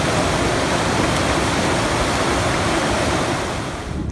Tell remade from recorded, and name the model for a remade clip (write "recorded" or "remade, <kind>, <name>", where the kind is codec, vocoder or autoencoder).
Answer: recorded